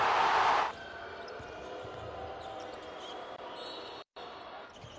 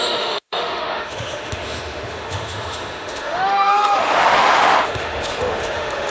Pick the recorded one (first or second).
first